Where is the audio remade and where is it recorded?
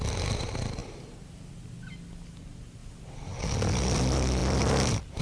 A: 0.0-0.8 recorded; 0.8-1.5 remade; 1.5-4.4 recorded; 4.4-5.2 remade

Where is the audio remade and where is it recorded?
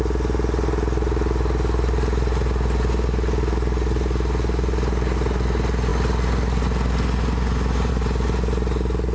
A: 0.0-9.1 recorded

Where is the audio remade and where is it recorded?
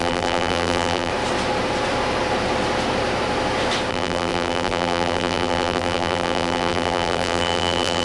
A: 0.0-1.1 remade; 1.1-3.9 recorded; 3.9-8.0 remade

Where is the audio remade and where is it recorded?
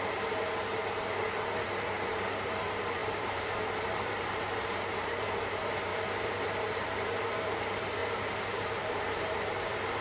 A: 0.0-0.8 remade; 0.8-2.1 recorded; 2.1-10.0 remade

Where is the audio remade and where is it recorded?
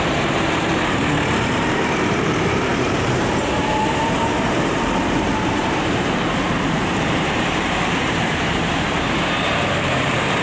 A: 0.0-10.4 remade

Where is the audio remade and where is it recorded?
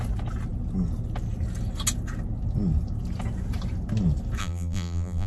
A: 0.0-4.4 recorded; 4.4-5.3 remade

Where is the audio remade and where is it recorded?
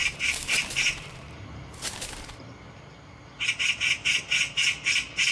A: 0.0-3.2 remade; 3.2-5.3 recorded